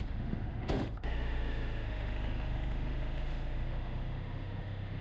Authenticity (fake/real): fake